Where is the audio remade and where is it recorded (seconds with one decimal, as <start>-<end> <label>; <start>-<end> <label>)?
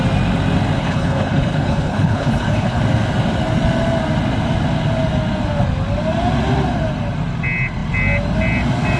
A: 0.0-0.8 recorded; 0.8-2.8 remade; 2.8-9.0 recorded